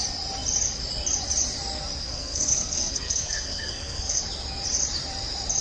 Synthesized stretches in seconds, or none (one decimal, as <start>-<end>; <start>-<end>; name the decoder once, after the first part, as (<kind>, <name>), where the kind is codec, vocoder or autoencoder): 2.0-4.2 (codec, SNAC)